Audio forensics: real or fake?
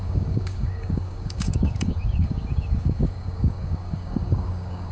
fake